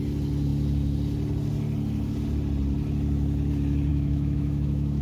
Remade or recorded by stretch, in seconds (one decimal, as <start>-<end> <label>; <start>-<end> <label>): 0.0-3.9 recorded; 3.9-5.0 remade